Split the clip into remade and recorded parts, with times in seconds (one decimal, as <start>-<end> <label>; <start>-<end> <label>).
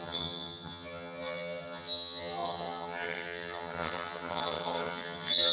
0.0-5.5 remade